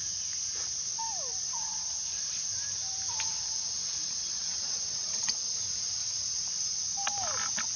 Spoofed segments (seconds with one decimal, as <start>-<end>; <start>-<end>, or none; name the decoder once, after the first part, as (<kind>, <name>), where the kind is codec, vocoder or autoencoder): 4.2-5.3 (vocoder, WaveNeXt)